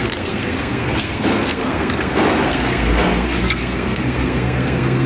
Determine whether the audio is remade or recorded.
remade